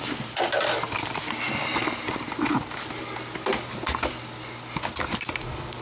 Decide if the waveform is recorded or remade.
recorded